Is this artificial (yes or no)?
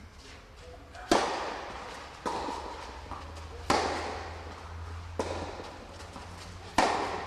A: no